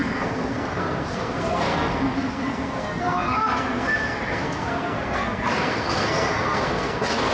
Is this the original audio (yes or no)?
no